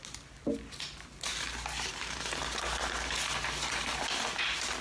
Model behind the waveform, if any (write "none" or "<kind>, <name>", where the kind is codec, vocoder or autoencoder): none